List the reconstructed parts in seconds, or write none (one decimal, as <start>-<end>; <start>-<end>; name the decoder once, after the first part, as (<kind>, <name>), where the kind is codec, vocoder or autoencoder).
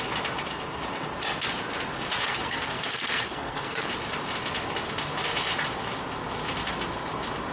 2.3-3.9 (codec, SNAC)